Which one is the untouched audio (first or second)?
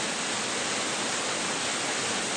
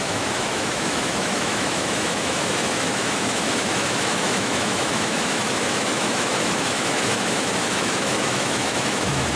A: first